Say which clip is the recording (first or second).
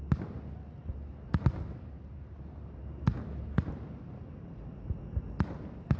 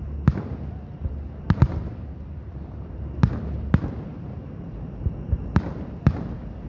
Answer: first